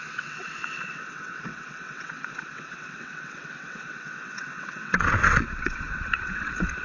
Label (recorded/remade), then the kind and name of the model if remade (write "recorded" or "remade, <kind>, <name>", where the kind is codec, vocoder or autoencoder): remade, vocoder, WaveNeXt